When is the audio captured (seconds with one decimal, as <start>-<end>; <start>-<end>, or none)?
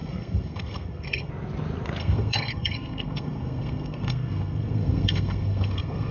1.3-2.0